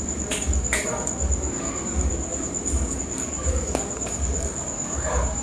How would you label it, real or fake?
fake